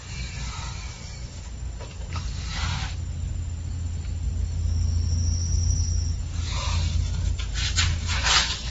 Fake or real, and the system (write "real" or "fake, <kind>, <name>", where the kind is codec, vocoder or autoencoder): real